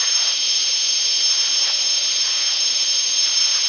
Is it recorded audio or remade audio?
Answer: remade